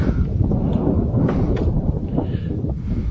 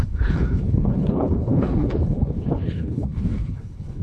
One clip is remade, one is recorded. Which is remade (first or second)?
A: second